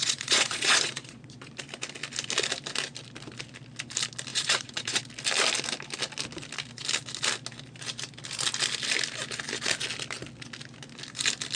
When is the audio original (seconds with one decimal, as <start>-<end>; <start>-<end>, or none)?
1.5-4.3; 5.0-11.6